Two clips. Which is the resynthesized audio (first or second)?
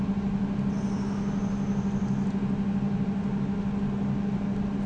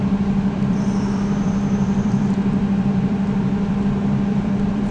second